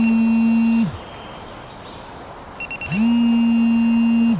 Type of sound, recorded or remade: recorded